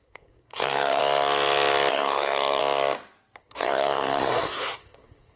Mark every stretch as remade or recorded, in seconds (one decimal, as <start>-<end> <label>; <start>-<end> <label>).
0.0-1.0 remade; 1.0-1.9 recorded; 1.9-2.6 remade; 2.6-3.4 recorded; 3.4-5.4 remade